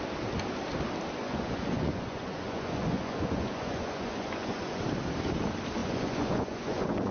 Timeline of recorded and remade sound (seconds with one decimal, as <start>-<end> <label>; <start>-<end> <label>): 0.0-1.2 recorded; 1.2-4.8 remade; 4.8-5.8 recorded; 5.8-7.1 remade